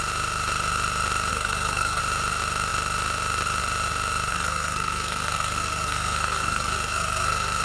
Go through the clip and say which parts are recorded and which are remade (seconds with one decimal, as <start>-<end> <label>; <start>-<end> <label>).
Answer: 0.0-1.3 recorded; 1.3-2.0 remade; 2.0-4.3 recorded; 4.3-7.6 remade